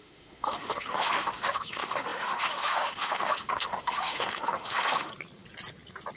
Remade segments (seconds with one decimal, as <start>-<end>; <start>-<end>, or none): 0.0-5.1